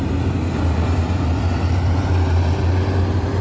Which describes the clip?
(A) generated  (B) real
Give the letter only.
B